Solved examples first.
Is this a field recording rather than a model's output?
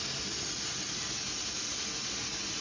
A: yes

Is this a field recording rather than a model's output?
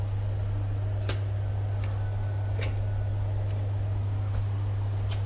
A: yes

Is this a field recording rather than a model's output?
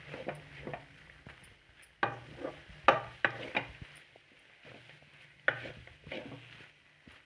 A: yes